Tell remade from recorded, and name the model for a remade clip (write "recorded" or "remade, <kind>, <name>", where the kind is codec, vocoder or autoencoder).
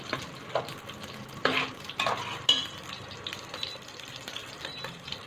remade, vocoder, BigVGAN v2